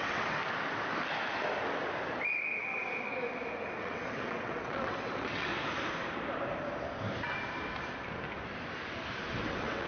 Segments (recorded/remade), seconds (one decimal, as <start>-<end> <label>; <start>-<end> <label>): 0.0-0.4 remade; 0.4-3.8 recorded; 3.8-5.5 remade; 5.5-9.3 recorded; 9.3-9.9 remade